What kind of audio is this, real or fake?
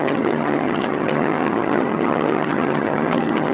fake